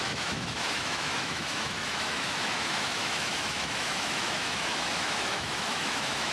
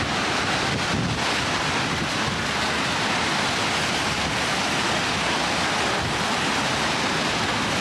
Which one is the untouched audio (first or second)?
second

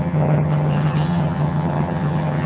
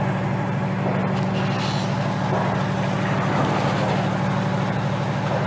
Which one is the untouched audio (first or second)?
second